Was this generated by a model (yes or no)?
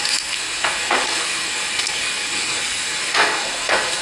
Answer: yes